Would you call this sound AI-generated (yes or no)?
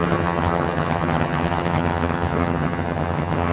yes